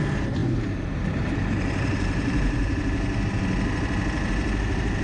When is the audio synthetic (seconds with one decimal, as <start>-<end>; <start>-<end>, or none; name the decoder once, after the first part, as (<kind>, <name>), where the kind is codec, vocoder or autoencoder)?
0.4-3.4 (vocoder, BigVGAN v2)